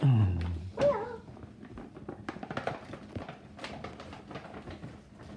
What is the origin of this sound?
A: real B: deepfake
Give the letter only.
A